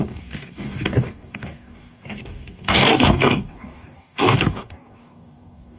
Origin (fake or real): fake